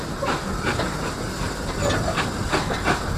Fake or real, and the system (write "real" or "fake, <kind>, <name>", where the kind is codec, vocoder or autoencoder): real